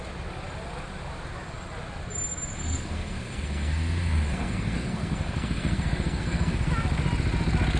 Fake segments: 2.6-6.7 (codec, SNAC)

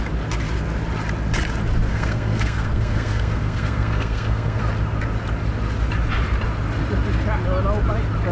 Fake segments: 1.9-4.6 (codec, SNAC)